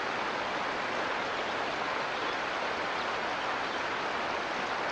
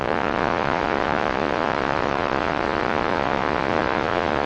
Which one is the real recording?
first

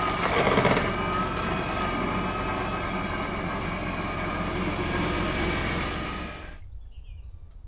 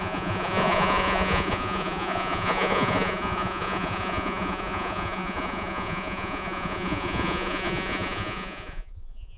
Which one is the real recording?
first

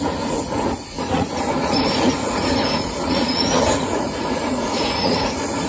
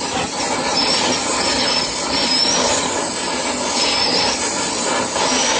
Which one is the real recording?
second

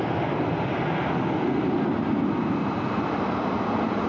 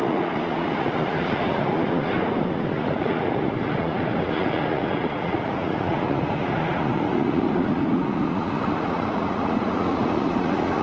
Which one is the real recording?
first